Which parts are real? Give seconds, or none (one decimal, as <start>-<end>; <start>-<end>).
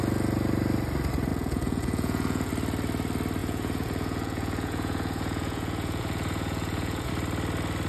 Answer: 0.0-1.3; 2.5-3.4; 7.1-7.9